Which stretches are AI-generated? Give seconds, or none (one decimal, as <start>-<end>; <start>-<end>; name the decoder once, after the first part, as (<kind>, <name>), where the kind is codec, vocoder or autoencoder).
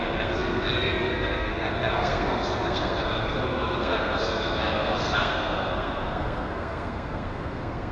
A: 0.0-7.9 (codec, SNAC)